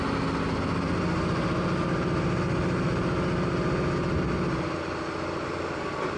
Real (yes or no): yes